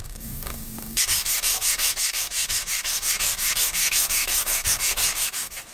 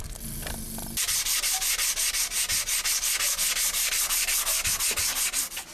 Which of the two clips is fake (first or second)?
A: first